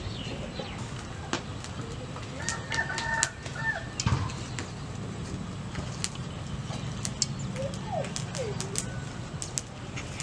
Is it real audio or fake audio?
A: real